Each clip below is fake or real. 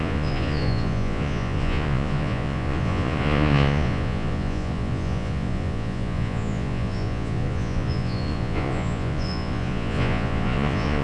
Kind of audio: fake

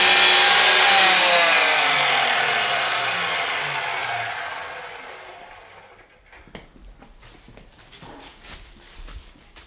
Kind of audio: real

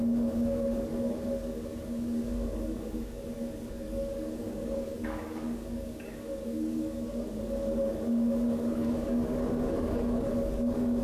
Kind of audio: fake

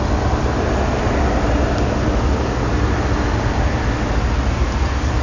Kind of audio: real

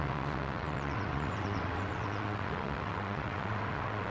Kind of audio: fake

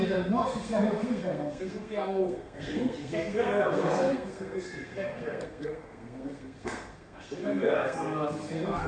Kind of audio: fake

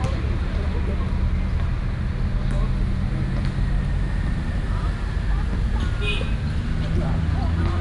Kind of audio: real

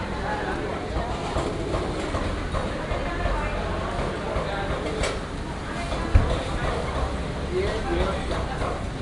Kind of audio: real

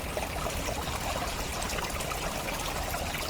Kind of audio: real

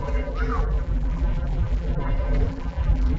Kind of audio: fake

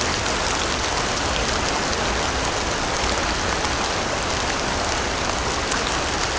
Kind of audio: real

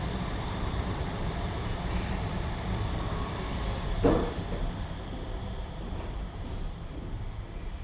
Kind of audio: fake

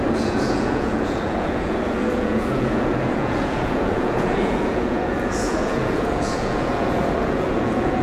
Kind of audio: fake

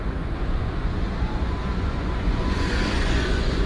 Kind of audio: fake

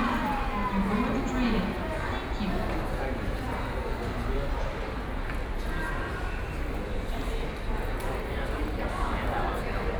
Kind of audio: real